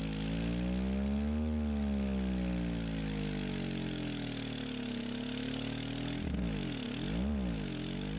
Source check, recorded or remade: recorded